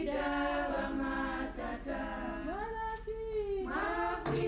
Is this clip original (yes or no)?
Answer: yes